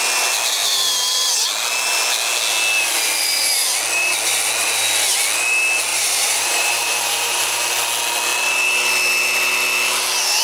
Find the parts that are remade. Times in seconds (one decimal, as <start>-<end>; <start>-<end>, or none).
5.9-7.6